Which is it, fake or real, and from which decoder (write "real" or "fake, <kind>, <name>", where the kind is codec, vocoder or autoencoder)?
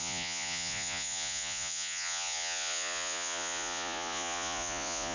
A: fake, vocoder, Vocos